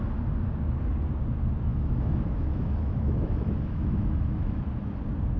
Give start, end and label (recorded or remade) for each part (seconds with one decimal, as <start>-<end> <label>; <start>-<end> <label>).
0.0-1.7 recorded; 1.7-4.6 remade; 4.6-5.4 recorded